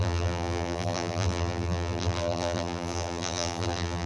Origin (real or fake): fake